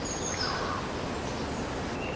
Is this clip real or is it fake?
real